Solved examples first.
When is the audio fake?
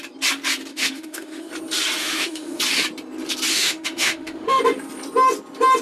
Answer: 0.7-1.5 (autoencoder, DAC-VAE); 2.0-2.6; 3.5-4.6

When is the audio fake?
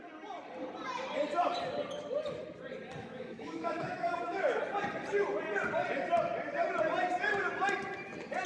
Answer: 3.0-4.6 (autoencoder, DAC-VAE)